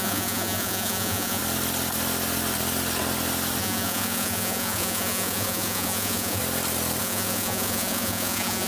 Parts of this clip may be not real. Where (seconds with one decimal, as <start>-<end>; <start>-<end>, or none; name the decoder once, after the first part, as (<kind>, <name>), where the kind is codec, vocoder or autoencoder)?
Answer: 0.0-1.4 (vocoder, Vocos); 3.6-6.4; 7.0-8.7